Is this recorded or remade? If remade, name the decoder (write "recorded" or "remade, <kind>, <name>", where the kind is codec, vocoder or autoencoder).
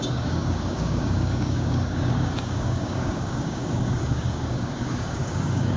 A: remade, codec, DAC